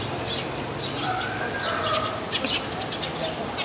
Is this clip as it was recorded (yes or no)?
yes